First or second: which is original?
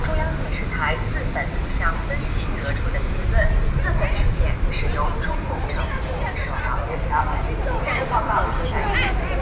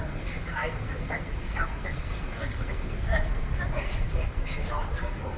first